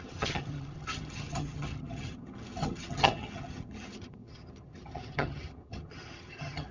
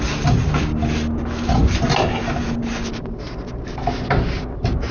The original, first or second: second